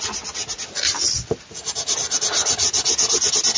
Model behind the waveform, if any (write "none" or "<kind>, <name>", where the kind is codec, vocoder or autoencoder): none